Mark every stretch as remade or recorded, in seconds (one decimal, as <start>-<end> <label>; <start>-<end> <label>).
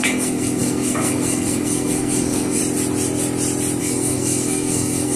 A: 0.0-2.6 remade; 2.6-3.8 recorded; 3.8-5.2 remade